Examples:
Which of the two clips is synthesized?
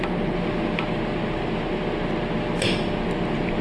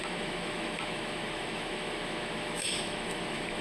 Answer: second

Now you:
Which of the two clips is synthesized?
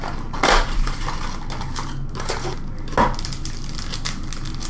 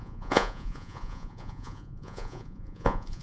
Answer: second